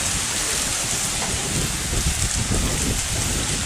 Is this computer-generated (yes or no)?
no